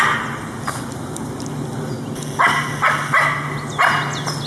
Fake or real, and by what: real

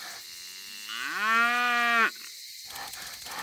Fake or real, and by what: real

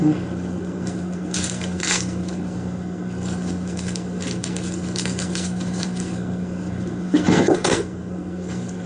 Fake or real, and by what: fake, codec, SNAC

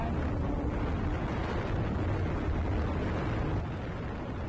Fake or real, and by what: real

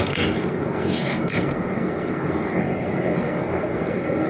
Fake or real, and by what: fake, codec, SNAC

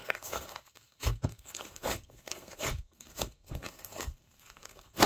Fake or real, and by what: fake, codec, SNAC